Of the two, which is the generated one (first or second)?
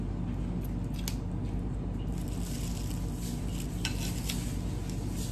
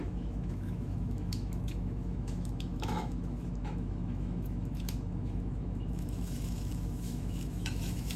second